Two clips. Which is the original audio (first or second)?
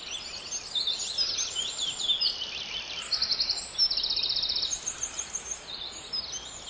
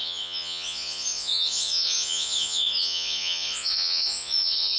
first